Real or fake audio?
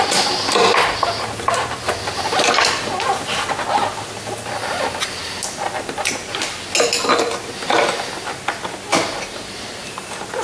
real